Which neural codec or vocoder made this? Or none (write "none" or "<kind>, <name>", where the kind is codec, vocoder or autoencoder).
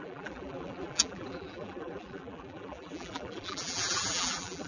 vocoder, BigVGAN v2